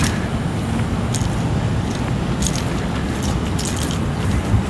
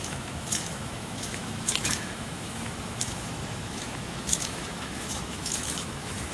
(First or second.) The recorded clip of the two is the first